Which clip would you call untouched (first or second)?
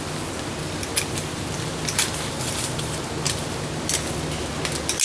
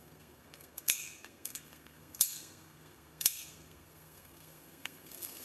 first